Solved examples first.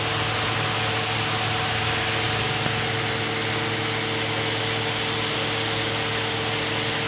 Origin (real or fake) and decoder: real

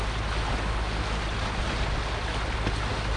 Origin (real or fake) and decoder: real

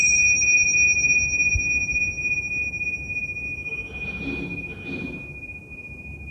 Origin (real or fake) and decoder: real